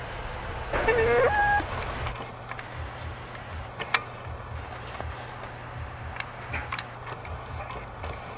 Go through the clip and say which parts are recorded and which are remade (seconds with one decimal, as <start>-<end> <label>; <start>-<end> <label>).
0.0-8.4 recorded